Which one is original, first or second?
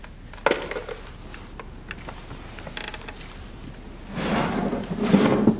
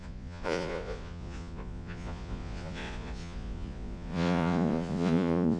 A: first